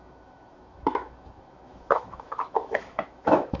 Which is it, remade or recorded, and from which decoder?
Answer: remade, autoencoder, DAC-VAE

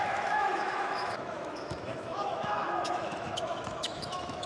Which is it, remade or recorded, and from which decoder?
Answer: remade, autoencoder, DAC-VAE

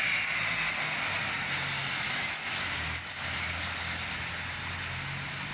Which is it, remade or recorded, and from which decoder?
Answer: recorded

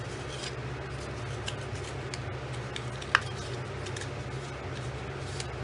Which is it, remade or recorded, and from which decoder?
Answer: recorded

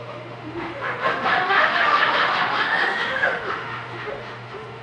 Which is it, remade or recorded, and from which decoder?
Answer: remade, autoencoder, DAC-VAE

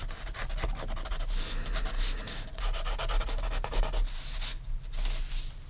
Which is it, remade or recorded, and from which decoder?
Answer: recorded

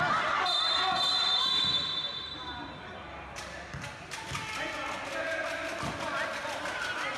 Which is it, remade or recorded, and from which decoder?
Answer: recorded